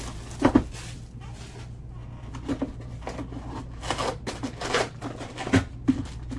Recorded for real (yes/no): yes